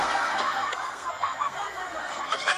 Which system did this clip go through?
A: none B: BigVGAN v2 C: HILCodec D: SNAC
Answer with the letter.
D